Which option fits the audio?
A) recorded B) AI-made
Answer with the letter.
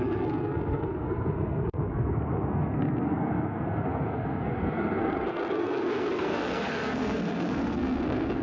B